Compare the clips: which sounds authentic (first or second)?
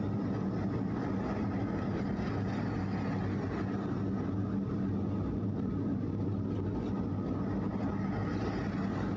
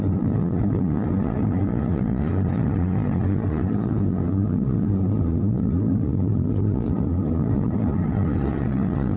first